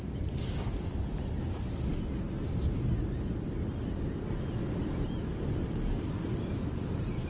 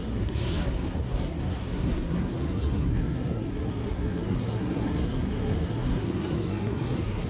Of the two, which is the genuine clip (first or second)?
first